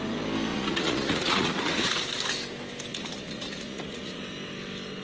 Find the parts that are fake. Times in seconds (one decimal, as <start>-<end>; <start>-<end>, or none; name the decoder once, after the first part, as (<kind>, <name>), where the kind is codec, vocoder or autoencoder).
0.5-2.0 (vocoder, Vocos); 2.9-4.2